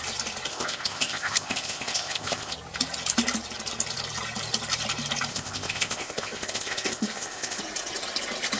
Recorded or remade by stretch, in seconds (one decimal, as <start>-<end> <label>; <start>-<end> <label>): 0.0-0.5 recorded; 0.5-2.5 remade; 2.5-5.3 recorded; 5.3-7.6 remade; 7.6-8.6 recorded